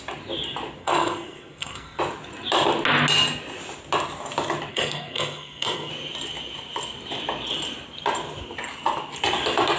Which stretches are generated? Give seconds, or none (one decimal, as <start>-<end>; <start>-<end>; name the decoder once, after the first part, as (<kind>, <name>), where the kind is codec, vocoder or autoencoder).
0.8-2.0 (codec, SNAC); 4.7-5.9